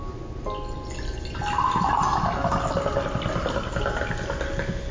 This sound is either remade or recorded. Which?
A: recorded